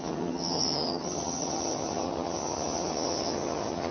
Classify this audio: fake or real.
fake